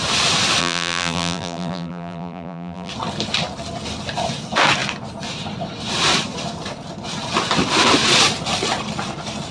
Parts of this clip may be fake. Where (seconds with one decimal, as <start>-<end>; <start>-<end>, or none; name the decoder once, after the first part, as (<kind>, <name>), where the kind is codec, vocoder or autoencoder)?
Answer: 0.6-2.9 (vocoder, BigVGAN v2)